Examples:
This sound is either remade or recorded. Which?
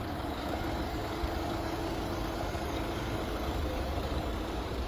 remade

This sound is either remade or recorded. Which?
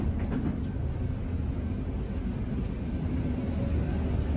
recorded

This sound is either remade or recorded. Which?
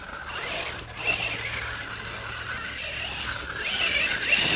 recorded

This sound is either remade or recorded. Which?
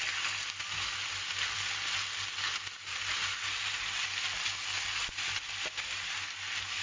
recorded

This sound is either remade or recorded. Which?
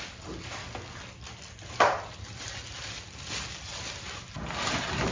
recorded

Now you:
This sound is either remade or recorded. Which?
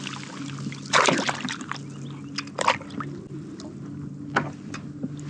recorded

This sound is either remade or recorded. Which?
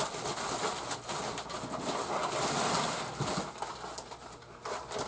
recorded